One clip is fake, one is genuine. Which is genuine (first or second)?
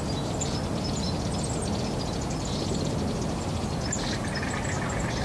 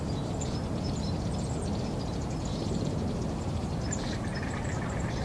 first